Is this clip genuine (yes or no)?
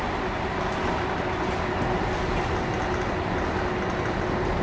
yes